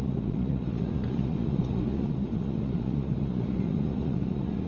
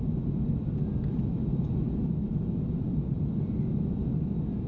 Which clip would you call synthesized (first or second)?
first